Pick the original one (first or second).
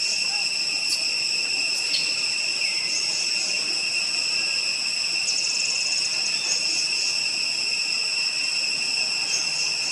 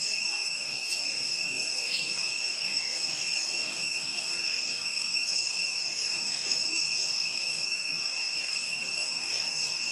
first